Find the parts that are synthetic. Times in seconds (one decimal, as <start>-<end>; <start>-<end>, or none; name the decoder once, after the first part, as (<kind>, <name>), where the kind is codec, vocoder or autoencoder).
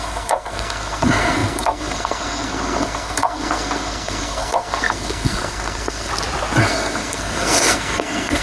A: 0.0-6.1 (codec, SNAC); 6.6-8.4